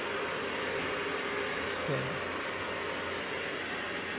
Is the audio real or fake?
real